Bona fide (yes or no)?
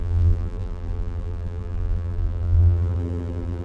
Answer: no